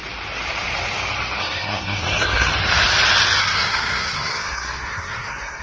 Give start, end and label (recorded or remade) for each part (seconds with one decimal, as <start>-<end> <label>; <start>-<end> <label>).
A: 0.0-1.4 recorded; 1.4-2.5 remade; 2.5-3.4 recorded; 3.4-5.6 remade